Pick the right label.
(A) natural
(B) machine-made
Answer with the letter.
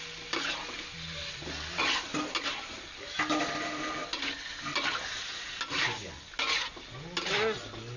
A